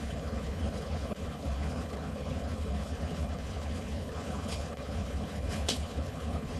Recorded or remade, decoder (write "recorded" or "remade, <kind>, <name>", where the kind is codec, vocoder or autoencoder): remade, codec, HILCodec